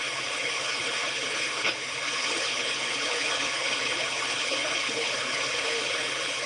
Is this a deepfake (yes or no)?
yes